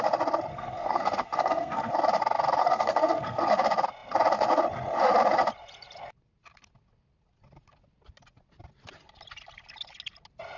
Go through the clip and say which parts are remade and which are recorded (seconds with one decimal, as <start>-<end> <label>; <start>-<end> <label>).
0.0-0.5 recorded; 0.5-1.9 remade; 1.9-2.6 recorded; 2.6-3.5 remade; 3.5-10.6 recorded